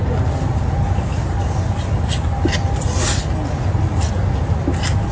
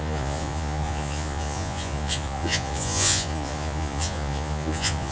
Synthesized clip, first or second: second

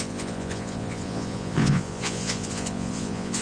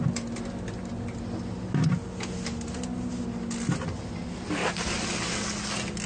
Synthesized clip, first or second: first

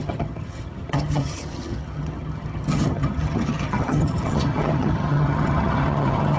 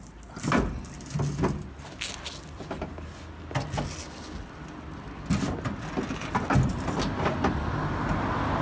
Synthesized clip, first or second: first